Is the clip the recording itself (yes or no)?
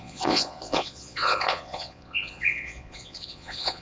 no